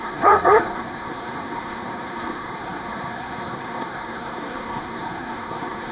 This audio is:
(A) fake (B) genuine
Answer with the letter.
A